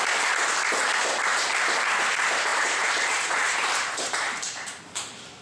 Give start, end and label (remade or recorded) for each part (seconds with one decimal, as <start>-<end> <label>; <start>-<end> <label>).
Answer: 0.0-1.3 recorded; 1.3-1.9 remade; 1.9-2.5 recorded; 2.5-4.8 remade; 4.8-5.4 recorded